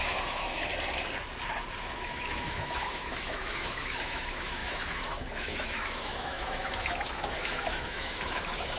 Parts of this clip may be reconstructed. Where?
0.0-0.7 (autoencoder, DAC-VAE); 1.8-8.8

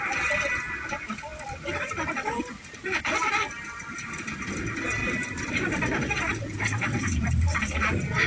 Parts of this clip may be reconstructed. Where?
5.0-7.9 (vocoder, BigVGAN v2)

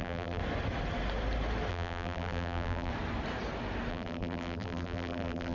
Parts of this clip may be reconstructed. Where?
0.0-0.4 (vocoder, BigVGAN v2); 1.7-2.9; 3.9-5.5

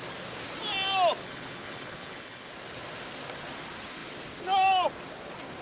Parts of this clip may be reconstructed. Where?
1.2-2.5 (codec, HILCodec)

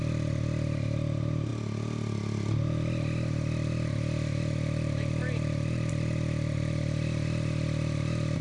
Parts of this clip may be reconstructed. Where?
none